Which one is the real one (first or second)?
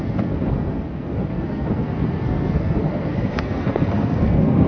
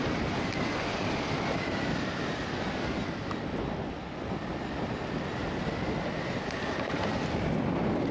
second